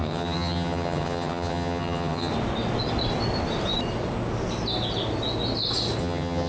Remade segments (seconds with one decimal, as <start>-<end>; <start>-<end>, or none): 0.0-2.3; 6.0-6.5